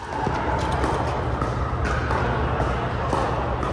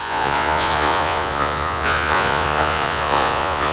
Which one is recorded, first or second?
first